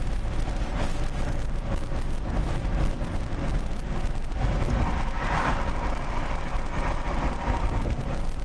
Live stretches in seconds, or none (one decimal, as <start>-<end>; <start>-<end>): 0.0-8.4

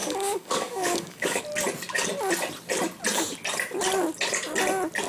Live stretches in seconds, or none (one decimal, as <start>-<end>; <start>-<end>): 1.4-5.1

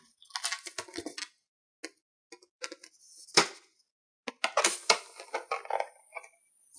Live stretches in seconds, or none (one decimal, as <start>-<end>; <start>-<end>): 0.0-6.8

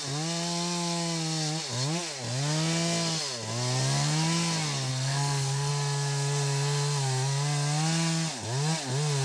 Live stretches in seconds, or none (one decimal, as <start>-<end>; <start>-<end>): 0.0-4.9; 5.7-9.2

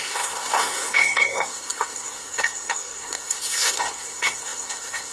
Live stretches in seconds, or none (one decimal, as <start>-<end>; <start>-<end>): none